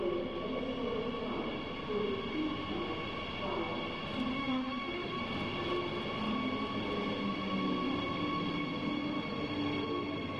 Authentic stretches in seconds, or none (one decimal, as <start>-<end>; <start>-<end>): 0.0-4.3; 5.2-10.4